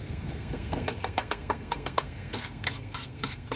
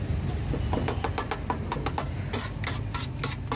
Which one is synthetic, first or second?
first